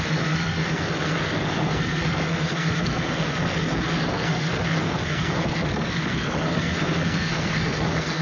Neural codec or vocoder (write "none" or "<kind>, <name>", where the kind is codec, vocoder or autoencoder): codec, SNAC